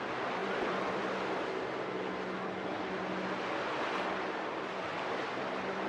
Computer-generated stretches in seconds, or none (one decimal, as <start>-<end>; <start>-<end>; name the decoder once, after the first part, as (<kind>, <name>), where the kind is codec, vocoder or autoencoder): none